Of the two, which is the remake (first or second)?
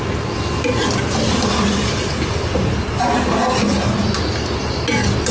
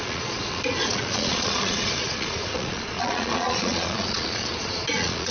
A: second